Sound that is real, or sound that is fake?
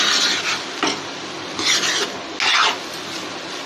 real